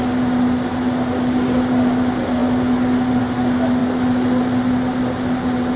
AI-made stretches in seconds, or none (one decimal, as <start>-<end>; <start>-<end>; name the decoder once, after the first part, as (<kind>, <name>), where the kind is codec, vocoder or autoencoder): none